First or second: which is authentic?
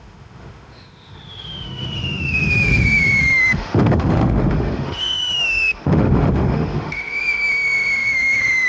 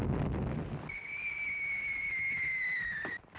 second